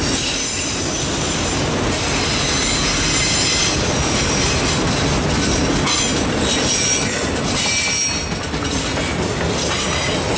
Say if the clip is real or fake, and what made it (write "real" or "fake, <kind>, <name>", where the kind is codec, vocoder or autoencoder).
real